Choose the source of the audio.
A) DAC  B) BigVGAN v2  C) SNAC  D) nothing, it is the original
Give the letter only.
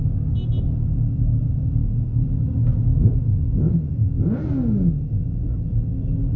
D